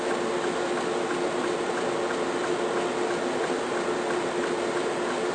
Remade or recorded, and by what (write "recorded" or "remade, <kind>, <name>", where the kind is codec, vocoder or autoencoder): recorded